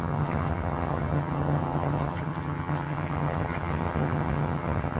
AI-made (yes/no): yes